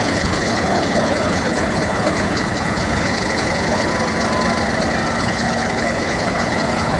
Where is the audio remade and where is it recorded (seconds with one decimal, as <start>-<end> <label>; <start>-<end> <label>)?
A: 0.0-3.9 remade; 3.9-5.2 recorded; 5.2-7.0 remade